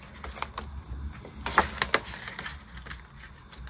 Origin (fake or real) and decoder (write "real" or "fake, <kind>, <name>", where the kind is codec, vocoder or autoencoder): real